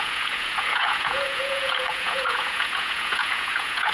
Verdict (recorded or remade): remade